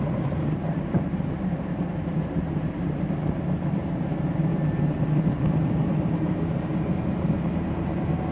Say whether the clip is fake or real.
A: fake